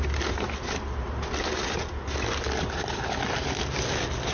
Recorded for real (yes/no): yes